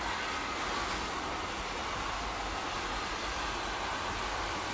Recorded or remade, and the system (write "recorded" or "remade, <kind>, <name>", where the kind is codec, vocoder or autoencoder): recorded